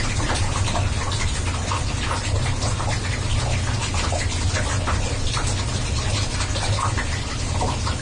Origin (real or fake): real